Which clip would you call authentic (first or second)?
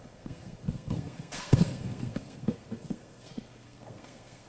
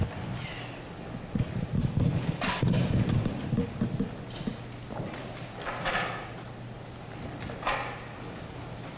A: second